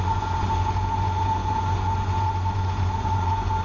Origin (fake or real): fake